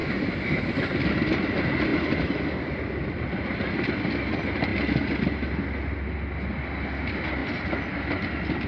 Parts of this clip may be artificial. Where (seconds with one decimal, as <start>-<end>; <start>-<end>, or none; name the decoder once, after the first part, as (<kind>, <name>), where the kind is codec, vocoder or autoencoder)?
0.0-1.5 (vocoder, BigVGAN v2); 1.9-4.0